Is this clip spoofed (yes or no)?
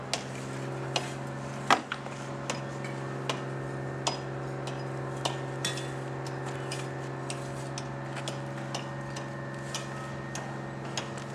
no